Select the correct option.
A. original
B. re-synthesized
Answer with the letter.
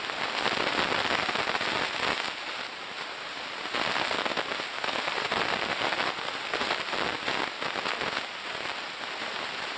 A